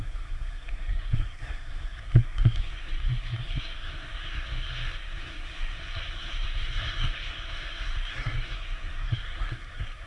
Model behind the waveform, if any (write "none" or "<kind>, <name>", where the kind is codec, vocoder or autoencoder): codec, SNAC